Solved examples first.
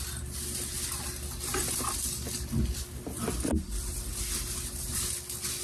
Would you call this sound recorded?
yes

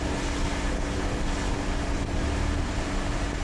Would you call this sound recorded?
yes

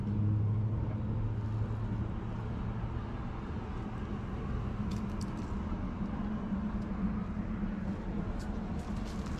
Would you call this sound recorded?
yes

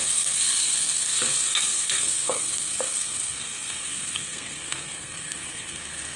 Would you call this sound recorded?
no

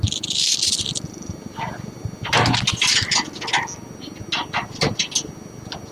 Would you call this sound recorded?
yes